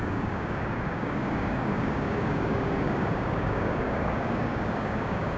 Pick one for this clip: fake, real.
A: fake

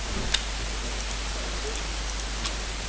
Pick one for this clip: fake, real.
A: real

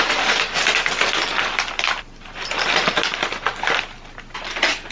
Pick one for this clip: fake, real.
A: real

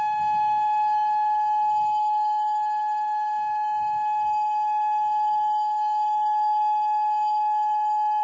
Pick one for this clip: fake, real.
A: fake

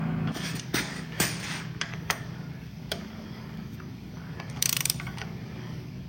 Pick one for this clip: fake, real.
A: fake